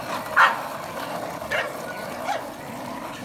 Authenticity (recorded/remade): recorded